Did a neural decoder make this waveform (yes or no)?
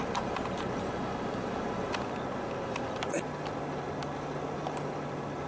no